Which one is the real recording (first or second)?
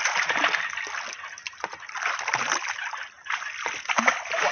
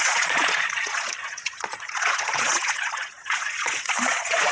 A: first